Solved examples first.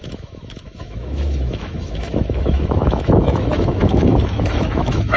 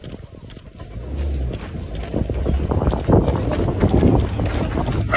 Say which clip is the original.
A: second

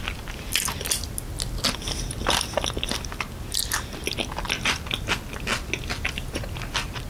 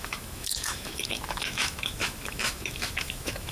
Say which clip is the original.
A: first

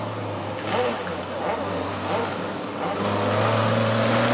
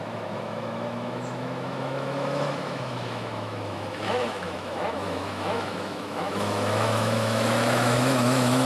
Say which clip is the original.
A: first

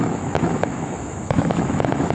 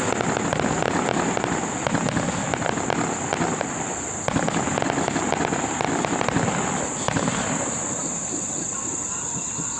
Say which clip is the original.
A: second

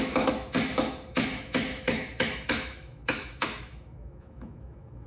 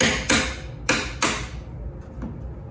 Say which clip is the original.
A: second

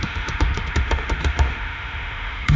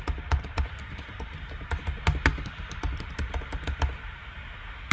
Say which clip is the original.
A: second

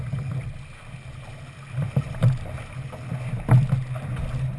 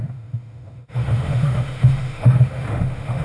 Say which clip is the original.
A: first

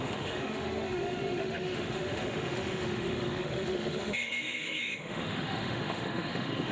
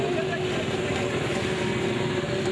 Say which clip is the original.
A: second